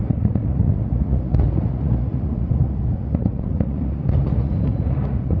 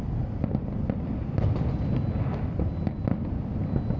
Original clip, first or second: second